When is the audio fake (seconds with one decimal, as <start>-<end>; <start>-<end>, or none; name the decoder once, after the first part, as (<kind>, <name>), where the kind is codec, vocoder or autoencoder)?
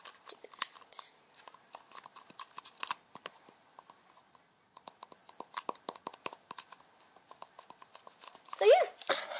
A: none